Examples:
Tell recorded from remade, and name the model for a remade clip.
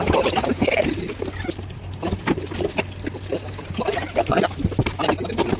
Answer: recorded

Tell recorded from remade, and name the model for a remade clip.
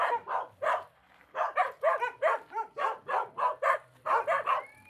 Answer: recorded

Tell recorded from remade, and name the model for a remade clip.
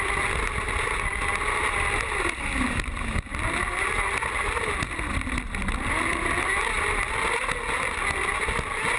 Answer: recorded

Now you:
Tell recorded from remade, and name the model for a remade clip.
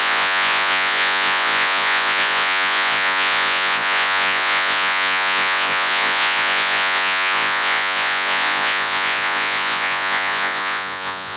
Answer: remade, vocoder, Vocos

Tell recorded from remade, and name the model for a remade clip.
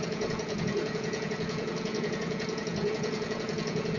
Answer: remade, vocoder, Vocos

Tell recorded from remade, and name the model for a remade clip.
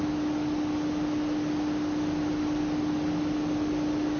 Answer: recorded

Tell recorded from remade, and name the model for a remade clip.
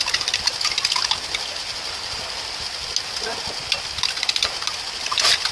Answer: recorded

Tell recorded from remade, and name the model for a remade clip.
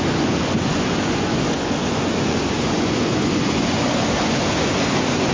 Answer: remade, vocoder, Vocos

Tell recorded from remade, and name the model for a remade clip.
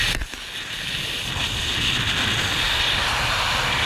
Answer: recorded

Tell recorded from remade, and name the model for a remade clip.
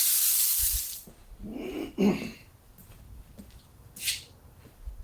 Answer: recorded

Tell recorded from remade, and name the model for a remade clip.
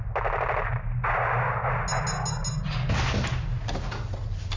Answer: recorded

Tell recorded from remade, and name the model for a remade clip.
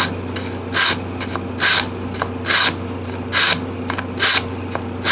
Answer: recorded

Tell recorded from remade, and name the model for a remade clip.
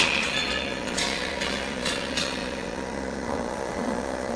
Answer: remade, vocoder, Vocos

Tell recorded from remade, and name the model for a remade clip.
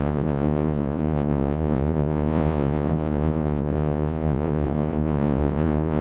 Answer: remade, vocoder, Vocos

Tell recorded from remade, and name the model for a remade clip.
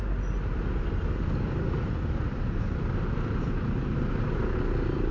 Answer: recorded